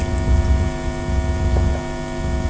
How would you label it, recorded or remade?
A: recorded